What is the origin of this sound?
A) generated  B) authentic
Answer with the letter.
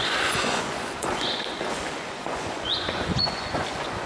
A